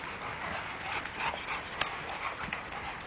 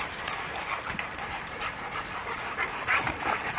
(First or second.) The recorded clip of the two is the first